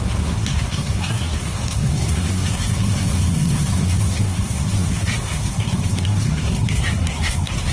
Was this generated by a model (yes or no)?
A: yes